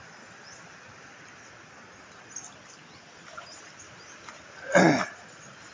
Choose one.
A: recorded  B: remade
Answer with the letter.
A